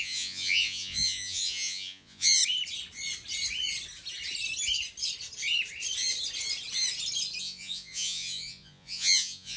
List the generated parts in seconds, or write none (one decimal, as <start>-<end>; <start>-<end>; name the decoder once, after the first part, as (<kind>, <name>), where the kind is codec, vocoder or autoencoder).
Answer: 0.0-2.4 (vocoder, Vocos); 7.4-9.6